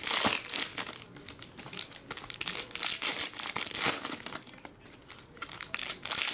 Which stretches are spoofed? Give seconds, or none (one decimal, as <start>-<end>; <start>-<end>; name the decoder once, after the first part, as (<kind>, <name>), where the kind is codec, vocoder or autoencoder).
none